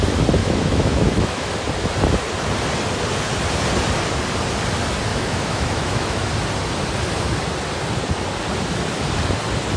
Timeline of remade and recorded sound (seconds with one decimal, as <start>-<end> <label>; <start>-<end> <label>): 0.0-0.4 recorded; 0.4-1.5 remade; 1.5-5.1 recorded; 5.1-6.3 remade; 6.3-9.8 recorded

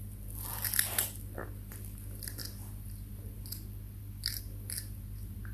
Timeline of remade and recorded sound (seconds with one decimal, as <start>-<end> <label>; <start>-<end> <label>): 0.0-5.5 recorded

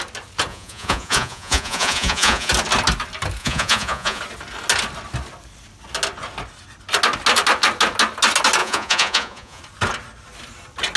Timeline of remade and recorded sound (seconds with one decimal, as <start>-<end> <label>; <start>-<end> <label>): 0.0-0.5 recorded; 0.5-2.5 remade; 2.5-3.4 recorded; 3.4-4.2 remade; 4.2-8.6 recorded; 8.6-9.6 remade; 9.6-11.0 recorded

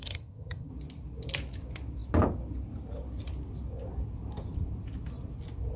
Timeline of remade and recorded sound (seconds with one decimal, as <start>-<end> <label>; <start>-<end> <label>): 0.0-0.7 remade; 0.7-5.8 recorded

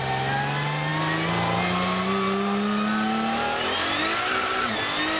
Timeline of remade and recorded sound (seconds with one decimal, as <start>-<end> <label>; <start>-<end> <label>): 0.0-5.2 recorded

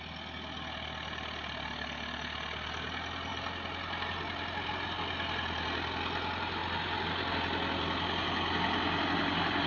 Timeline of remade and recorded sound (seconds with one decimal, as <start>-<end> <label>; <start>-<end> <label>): 0.0-9.7 recorded

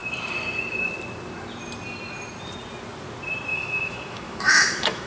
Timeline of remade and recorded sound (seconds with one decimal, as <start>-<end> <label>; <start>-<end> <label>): 0.0-3.5 recorded; 3.5-5.1 remade

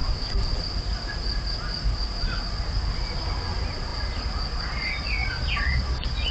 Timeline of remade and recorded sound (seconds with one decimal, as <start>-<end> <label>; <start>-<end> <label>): 0.0-6.3 recorded